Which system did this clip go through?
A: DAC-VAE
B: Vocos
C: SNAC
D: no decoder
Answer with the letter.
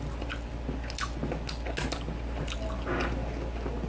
D